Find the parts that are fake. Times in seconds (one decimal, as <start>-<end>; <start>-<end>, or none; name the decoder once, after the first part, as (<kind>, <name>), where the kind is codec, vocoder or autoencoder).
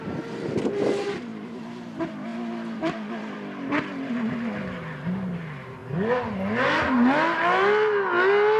2.3-4.1 (vocoder, BigVGAN v2)